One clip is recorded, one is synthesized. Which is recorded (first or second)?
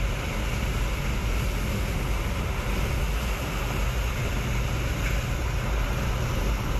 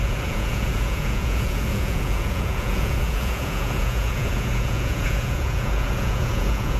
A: first